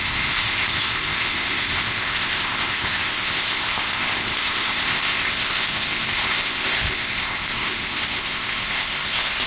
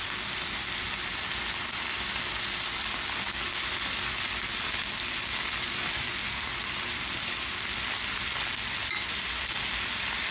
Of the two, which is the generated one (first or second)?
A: first